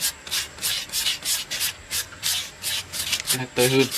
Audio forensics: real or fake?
real